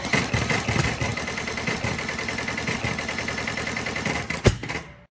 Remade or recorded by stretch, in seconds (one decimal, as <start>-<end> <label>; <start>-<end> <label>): 0.0-5.2 recorded